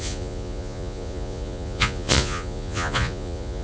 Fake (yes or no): yes